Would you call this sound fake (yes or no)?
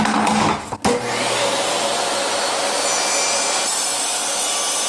no